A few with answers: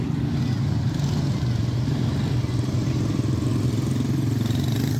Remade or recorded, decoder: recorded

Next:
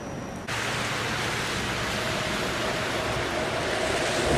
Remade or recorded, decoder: recorded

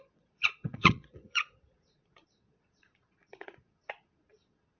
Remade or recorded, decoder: remade, vocoder, Vocos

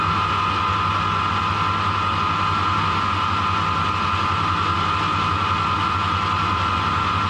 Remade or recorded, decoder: recorded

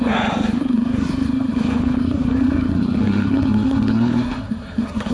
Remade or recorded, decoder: remade, codec, SNAC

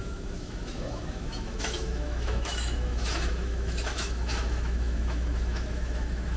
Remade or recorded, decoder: remade, autoencoder, DAC-VAE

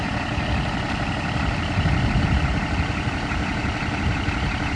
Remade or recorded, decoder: recorded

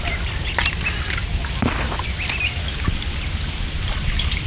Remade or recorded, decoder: recorded